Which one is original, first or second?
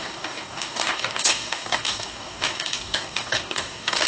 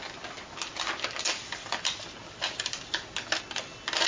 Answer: second